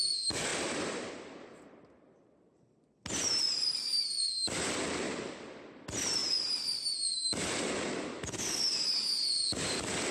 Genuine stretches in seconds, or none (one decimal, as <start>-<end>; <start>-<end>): 0.0-10.1